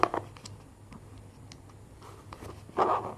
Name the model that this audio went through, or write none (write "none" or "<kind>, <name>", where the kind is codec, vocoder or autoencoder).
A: none